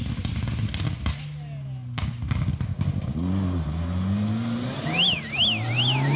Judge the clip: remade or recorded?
recorded